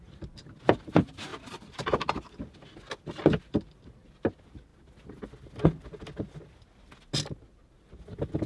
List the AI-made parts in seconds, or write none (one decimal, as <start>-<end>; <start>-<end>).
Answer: 1.3-1.9